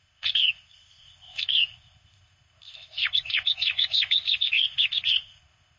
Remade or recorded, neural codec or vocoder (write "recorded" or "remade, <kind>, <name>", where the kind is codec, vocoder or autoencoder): remade, codec, ZipCodec